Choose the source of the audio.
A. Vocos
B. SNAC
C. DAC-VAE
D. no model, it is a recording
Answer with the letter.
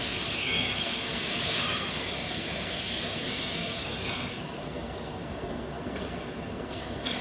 B